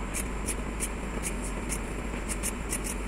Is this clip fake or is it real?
fake